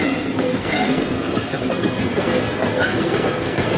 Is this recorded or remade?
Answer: remade